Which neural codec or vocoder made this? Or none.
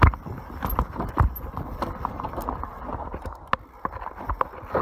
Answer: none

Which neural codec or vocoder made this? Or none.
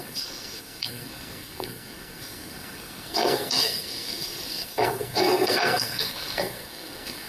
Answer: codec, SNAC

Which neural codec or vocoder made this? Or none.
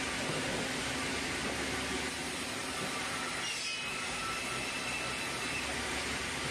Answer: none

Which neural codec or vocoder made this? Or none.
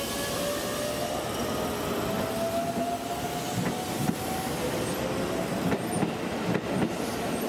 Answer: none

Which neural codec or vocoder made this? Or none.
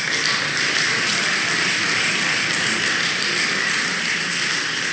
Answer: none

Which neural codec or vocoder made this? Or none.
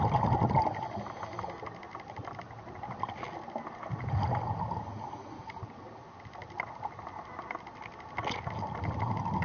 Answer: none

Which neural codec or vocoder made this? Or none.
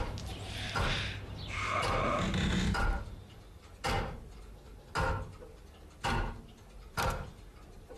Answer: none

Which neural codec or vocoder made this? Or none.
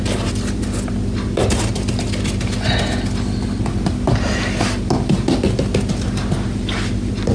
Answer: none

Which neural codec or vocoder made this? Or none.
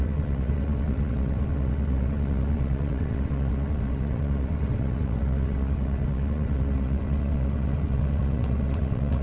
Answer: vocoder, WaveNeXt